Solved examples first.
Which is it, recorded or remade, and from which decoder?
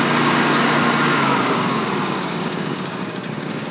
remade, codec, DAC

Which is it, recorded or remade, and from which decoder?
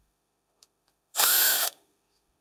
remade, autoencoder, DAC-VAE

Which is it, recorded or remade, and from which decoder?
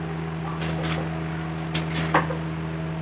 recorded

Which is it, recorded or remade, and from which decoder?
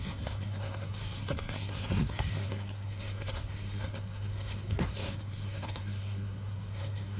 remade, codec, SNAC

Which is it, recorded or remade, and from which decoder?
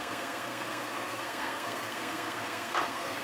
remade, codec, SNAC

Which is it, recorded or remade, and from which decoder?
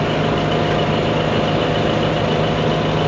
recorded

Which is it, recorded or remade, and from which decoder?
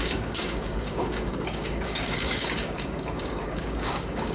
remade, codec, DAC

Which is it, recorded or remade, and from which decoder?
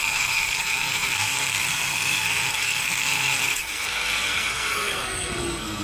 remade, codec, SNAC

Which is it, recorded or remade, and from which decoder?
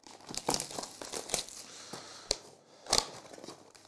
recorded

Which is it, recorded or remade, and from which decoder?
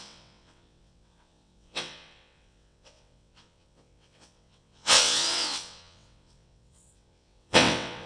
remade, vocoder, WaveNeXt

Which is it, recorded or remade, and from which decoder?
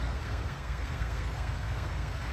remade, codec, SNAC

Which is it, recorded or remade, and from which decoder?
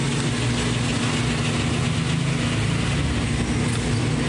recorded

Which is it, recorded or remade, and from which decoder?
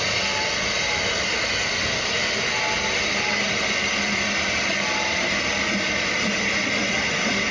recorded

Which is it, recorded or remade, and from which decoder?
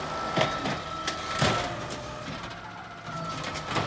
recorded